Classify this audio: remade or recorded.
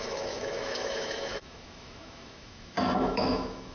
remade